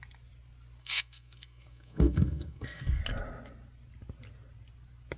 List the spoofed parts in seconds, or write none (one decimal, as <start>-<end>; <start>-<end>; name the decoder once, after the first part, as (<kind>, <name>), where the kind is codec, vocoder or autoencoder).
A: 0.8-3.0 (codec, SNAC)